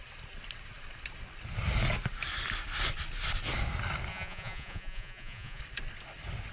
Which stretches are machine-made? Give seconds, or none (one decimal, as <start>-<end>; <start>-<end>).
4.1-5.6